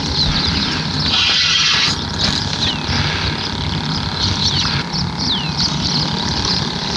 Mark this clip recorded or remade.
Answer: recorded